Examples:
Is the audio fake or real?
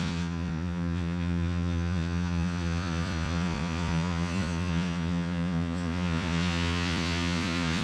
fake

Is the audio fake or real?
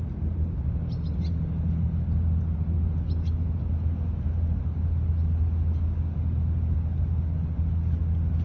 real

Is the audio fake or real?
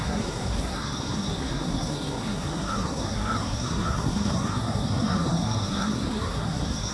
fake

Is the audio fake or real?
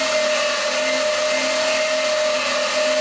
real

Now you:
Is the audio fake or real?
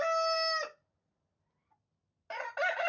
real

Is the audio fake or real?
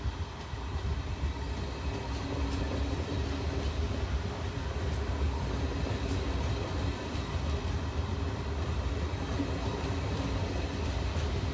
real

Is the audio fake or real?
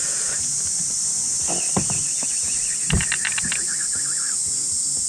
real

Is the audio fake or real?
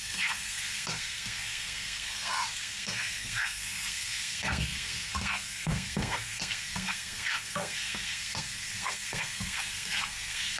fake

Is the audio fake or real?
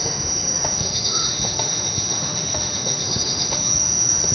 fake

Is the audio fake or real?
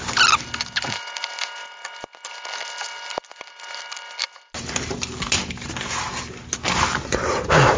real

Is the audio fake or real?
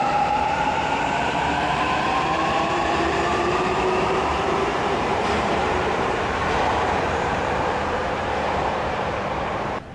fake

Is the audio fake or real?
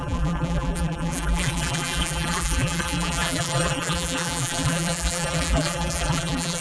fake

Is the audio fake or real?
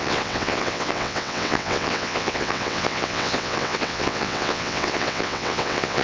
fake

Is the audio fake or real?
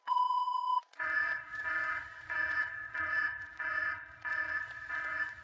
fake